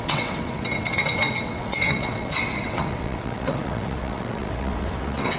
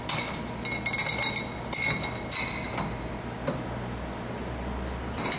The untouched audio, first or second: second